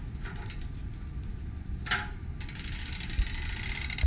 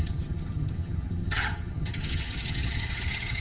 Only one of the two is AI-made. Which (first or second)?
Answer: second